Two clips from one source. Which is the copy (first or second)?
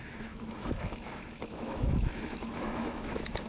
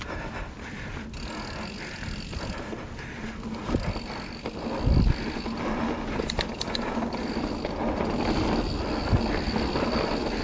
first